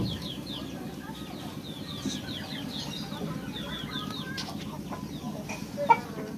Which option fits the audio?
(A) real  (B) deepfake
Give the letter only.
A